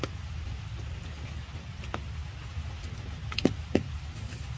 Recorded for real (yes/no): yes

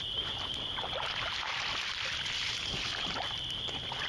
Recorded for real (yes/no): yes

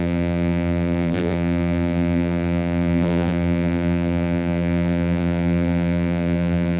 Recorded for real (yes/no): no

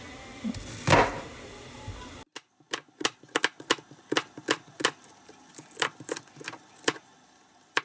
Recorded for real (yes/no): yes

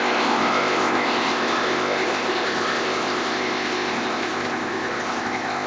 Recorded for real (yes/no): no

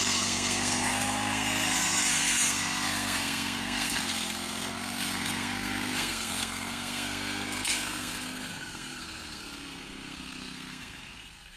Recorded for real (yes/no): no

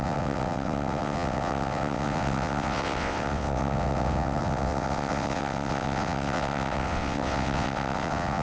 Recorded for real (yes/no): no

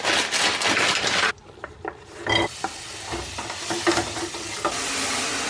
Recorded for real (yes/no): yes